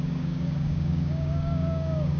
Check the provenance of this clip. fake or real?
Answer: fake